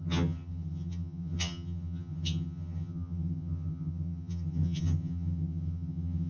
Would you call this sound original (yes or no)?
no